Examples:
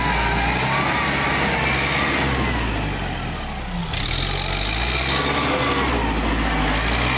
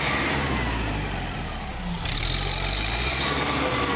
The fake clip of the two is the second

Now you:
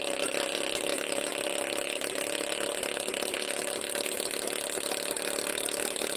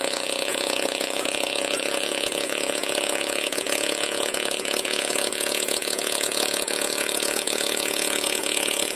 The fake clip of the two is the second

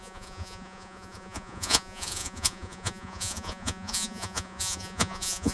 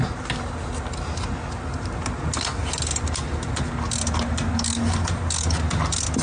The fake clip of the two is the first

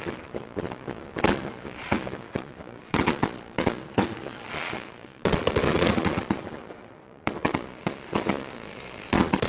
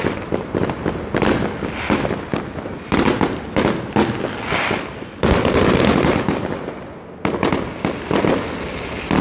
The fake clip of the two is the first